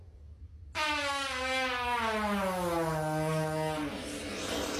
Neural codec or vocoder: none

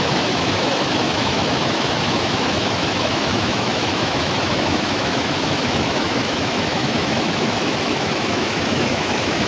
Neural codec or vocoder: autoencoder, DAC-VAE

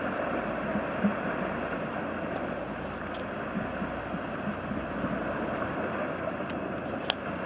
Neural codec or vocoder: none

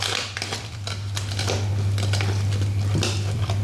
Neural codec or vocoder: vocoder, BigVGAN v2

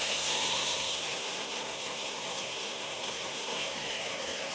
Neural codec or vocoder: codec, SNAC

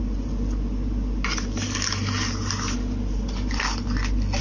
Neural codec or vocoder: none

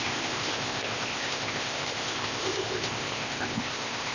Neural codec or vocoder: codec, ZipCodec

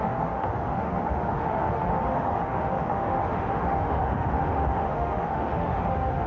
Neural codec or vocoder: autoencoder, DAC-VAE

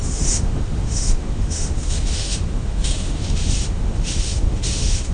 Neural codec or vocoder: autoencoder, DAC-VAE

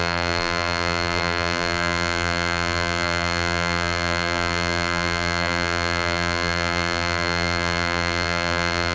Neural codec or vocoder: vocoder, BigVGAN v2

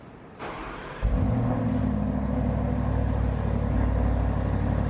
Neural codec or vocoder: none